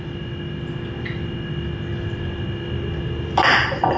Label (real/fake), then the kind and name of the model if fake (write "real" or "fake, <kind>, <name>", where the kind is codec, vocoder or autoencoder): real